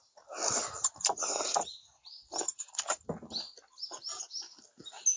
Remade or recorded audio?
recorded